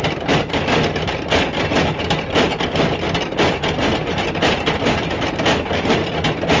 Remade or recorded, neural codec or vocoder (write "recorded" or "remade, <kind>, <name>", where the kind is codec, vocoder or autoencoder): recorded